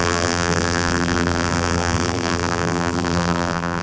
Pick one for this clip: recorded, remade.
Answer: remade